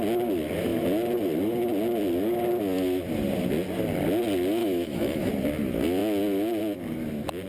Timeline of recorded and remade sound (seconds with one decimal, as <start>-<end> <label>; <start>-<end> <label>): 0.0-4.6 recorded; 4.6-5.3 remade; 5.3-7.5 recorded